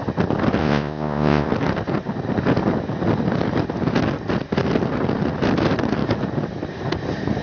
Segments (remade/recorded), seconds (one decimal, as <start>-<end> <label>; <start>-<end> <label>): 0.0-0.6 recorded; 0.6-1.5 remade; 1.5-7.4 recorded